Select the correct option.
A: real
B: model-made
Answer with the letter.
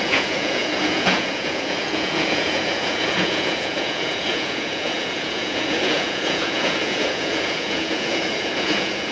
B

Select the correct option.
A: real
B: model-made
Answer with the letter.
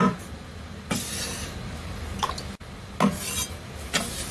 A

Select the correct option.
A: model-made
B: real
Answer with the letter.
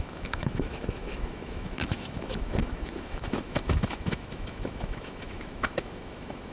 A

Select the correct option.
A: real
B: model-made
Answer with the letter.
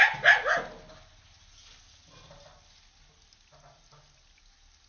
A